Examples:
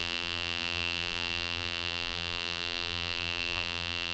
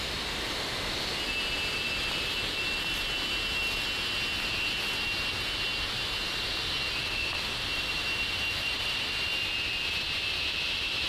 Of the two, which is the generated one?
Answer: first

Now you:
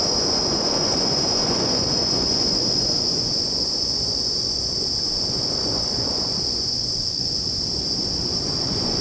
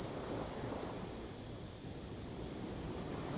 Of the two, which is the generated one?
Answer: first